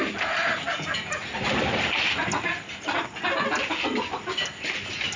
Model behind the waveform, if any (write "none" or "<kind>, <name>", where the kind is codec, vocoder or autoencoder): none